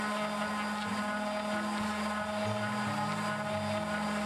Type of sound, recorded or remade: recorded